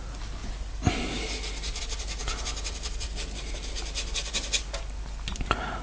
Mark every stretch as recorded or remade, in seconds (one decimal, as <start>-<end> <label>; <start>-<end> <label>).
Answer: 0.0-5.8 recorded